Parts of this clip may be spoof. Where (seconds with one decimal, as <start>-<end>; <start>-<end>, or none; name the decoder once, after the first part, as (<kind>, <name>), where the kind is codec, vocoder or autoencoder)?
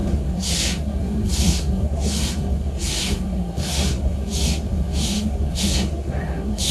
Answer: 0.0-6.7 (codec, SNAC)